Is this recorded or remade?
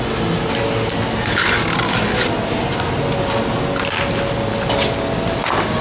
recorded